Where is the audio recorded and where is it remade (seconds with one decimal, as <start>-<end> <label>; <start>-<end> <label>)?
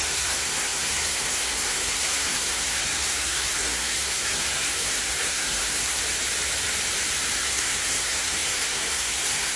0.0-6.0 remade; 6.0-7.4 recorded; 7.4-9.6 remade